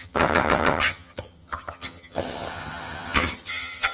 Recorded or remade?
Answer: remade